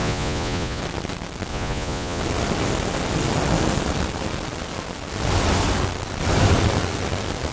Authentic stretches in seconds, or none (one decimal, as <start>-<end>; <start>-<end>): 0.8-1.5; 2.2-7.5